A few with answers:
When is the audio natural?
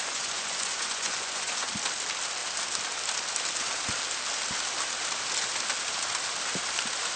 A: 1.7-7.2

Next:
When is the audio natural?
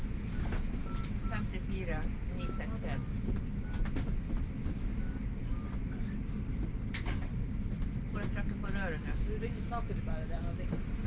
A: 0.0-11.1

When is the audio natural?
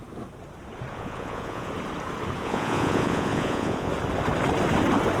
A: 0.0-0.9; 1.7-2.4; 3.9-5.2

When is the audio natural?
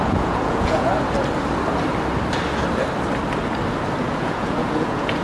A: 0.9-4.0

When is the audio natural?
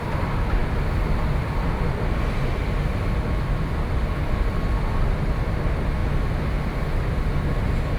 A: 0.0-8.0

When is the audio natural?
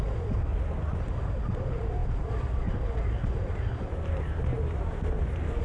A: 0.5-1.0; 3.9-5.6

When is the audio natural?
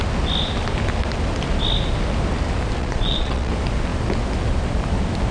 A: 0.0-2.8; 3.5-5.3